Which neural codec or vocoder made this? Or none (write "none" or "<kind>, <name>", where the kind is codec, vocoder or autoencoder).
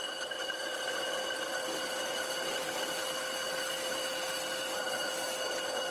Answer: none